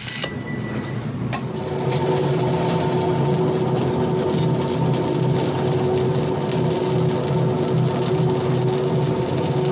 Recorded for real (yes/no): yes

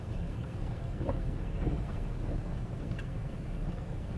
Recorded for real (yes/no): no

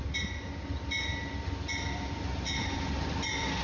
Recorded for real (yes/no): yes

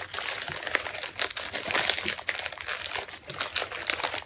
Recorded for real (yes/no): yes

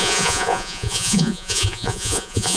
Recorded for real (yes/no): no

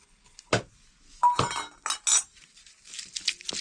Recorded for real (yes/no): yes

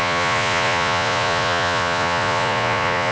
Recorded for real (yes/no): no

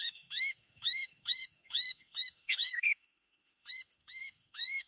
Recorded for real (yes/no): no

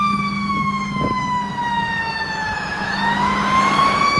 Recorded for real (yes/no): no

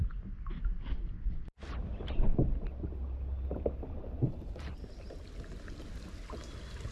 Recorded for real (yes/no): yes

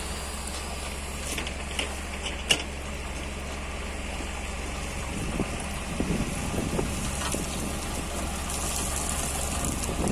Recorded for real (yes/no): yes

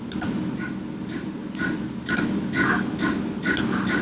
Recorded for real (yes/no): yes